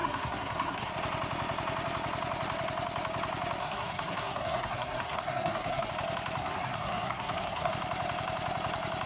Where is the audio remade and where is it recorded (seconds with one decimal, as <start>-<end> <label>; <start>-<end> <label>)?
0.0-0.9 remade; 0.9-3.6 recorded; 3.6-5.9 remade; 5.9-6.4 recorded; 6.4-7.7 remade; 7.7-9.1 recorded